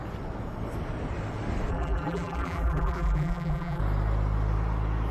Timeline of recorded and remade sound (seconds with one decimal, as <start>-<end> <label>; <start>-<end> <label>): 0.0-1.7 recorded; 1.7-3.8 remade; 3.8-5.1 recorded